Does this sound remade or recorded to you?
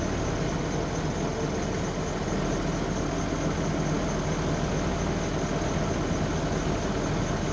recorded